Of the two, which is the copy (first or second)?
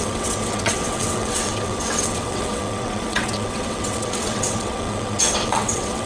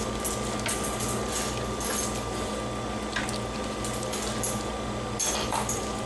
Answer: first